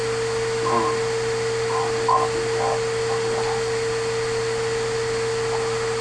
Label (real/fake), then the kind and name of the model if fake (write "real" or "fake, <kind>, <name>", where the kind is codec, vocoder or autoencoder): real